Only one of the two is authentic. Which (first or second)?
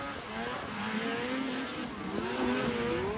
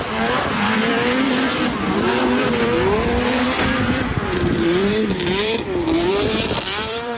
first